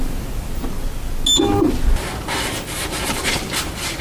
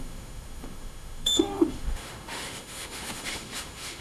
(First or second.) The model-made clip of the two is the second